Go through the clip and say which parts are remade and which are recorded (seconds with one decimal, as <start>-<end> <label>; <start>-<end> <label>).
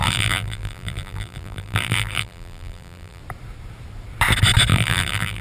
0.0-3.2 remade; 3.2-4.7 recorded; 4.7-5.4 remade